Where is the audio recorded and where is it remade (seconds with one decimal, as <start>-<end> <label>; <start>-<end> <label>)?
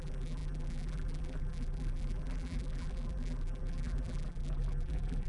0.0-5.3 remade